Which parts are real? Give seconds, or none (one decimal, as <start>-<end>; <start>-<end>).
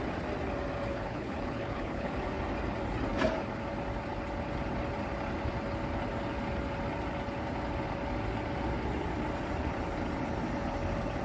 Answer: 0.0-0.9; 2.1-11.2